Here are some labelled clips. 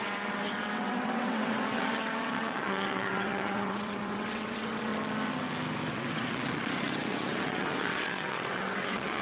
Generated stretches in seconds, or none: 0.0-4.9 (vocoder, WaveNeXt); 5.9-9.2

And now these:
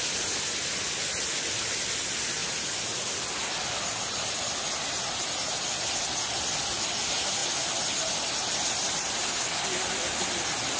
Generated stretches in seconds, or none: none

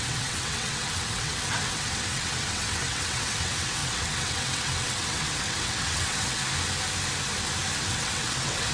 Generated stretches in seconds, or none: 0.0-6.4 (vocoder, WaveNeXt); 7.8-8.7

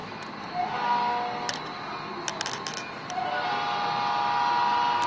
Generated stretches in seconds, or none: none

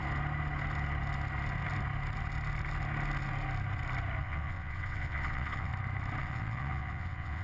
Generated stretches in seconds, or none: 4.2-5.7 (vocoder, WaveNeXt); 6.2-7.4

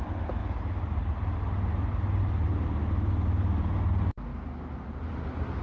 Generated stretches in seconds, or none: none

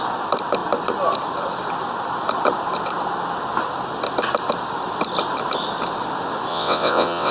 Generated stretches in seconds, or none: 6.5-7.3 (vocoder, WaveNeXt)